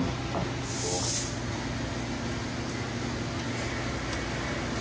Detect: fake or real real